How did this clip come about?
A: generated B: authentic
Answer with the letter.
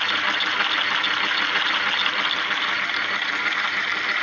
B